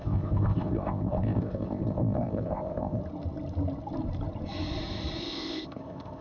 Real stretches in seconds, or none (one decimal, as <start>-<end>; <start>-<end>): 3.0-5.2